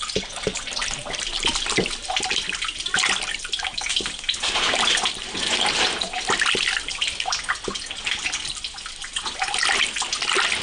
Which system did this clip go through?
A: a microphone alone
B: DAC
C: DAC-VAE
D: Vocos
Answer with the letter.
A